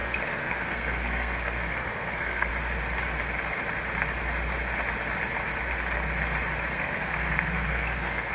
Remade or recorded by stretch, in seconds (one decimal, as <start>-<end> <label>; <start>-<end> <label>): 0.0-2.5 remade; 2.5-6.7 recorded; 6.7-8.3 remade